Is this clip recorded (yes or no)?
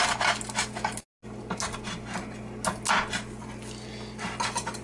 yes